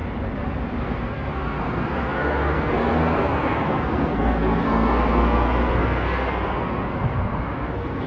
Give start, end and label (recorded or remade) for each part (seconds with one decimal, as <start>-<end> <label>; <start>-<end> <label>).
0.0-0.8 recorded; 0.8-8.1 remade